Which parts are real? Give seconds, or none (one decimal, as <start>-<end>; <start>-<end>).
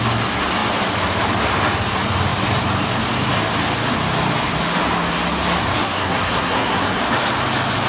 0.0-5.8; 7.0-7.9